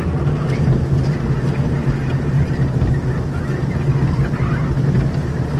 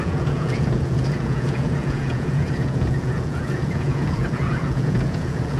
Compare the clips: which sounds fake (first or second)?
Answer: second